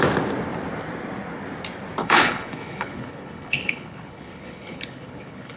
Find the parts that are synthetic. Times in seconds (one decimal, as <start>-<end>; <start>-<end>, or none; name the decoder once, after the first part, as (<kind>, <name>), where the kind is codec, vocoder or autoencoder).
2.0-5.6 (codec, HILCodec)